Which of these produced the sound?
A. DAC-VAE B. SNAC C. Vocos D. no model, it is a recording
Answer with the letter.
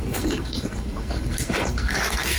B